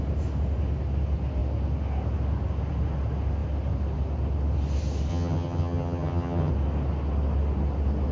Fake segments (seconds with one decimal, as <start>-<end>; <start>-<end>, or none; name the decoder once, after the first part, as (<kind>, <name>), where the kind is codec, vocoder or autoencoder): 5.1-6.5 (vocoder, HiFi-GAN)